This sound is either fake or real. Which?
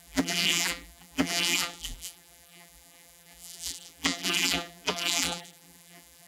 fake